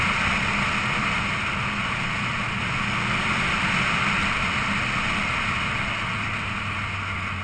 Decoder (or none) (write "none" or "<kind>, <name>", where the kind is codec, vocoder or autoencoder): none